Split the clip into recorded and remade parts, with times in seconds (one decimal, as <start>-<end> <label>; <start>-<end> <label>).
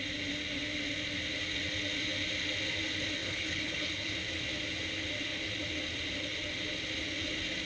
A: 0.0-3.2 recorded; 3.2-4.1 remade; 4.1-7.7 recorded